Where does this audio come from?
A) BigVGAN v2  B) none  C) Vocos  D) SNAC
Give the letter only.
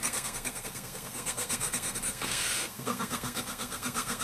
D